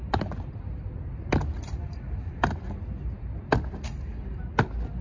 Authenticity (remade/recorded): recorded